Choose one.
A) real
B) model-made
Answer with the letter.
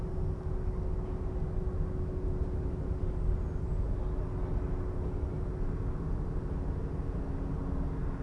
A